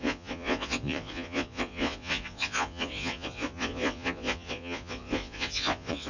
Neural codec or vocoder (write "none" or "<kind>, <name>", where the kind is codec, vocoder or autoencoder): vocoder, Vocos